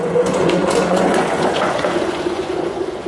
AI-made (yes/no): yes